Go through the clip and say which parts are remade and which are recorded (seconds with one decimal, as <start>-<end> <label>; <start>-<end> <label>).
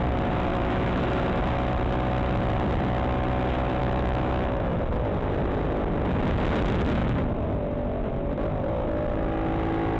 0.0-0.5 recorded; 0.5-1.0 remade; 1.0-3.8 recorded; 3.8-4.8 remade; 4.8-10.0 recorded